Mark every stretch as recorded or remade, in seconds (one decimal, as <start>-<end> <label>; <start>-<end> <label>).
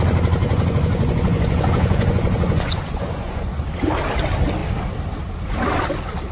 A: 0.0-0.4 recorded; 0.4-3.6 remade; 3.6-6.3 recorded